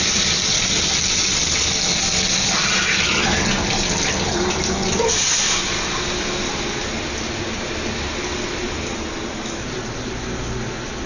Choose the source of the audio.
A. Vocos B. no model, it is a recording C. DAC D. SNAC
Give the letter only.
B